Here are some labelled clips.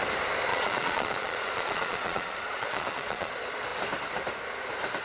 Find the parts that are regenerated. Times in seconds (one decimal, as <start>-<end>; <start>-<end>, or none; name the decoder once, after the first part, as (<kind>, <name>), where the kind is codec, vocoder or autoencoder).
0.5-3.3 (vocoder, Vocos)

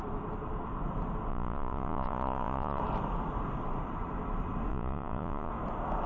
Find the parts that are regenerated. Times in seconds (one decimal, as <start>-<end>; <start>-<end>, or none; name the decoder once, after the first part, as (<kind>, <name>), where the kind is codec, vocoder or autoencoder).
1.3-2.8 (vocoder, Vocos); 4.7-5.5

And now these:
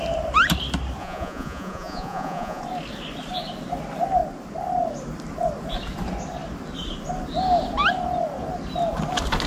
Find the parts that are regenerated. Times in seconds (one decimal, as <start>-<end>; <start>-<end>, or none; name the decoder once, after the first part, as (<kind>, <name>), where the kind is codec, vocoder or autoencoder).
1.0-2.6 (vocoder, Vocos)

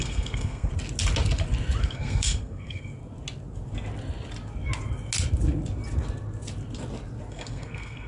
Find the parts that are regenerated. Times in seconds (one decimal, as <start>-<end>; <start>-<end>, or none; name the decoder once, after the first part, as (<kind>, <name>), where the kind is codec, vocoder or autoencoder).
0.0-0.7 (codec, SNAC); 1.8-2.9; 7.3-8.1

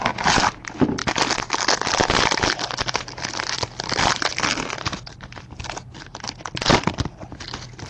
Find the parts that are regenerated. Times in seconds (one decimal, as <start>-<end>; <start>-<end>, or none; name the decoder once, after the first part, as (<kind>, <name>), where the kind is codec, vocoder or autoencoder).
none